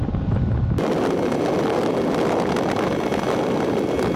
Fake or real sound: real